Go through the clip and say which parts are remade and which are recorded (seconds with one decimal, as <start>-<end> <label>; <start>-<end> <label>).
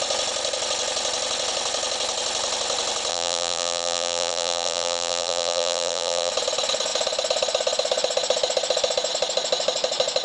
0.0-3.1 recorded; 3.1-6.3 remade; 6.3-10.2 recorded